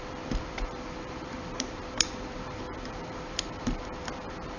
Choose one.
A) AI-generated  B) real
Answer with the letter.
A